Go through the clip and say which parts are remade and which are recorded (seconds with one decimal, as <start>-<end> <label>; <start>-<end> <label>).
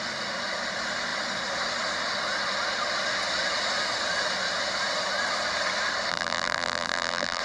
0.0-6.1 recorded; 6.1-7.4 remade